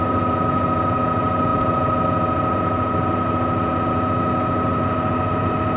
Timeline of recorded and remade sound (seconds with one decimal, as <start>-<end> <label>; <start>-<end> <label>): 0.0-5.8 recorded